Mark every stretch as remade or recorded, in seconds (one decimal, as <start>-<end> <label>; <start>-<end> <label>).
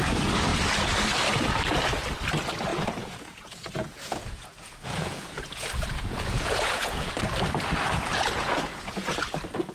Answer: 0.0-2.7 recorded; 2.7-7.1 remade; 7.1-8.1 recorded; 8.1-9.2 remade; 9.2-9.7 recorded